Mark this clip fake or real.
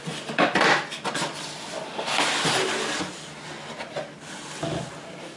real